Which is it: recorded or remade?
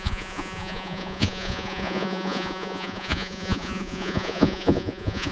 remade